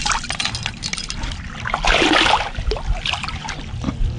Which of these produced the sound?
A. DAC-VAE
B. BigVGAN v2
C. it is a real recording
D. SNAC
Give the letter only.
C